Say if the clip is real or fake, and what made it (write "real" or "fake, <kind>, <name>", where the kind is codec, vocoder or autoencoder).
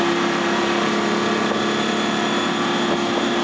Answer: real